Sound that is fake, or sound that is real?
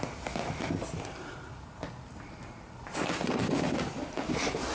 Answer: real